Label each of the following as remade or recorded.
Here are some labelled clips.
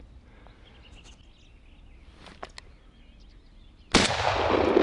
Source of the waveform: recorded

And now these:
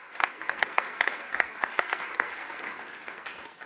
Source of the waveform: remade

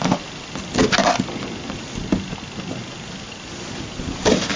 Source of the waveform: recorded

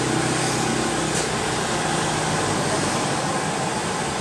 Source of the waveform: recorded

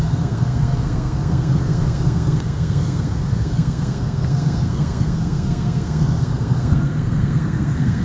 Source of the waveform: remade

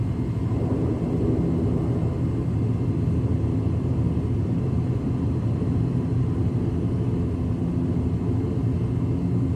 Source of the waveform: recorded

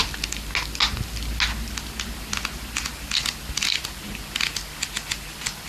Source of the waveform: recorded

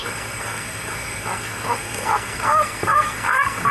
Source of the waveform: remade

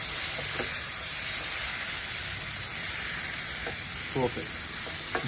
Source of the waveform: recorded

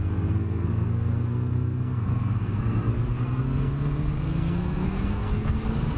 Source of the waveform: remade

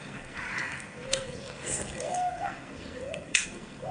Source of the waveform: remade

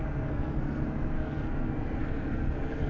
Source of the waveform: remade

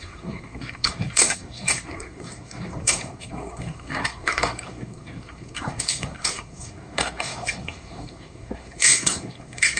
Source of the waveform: remade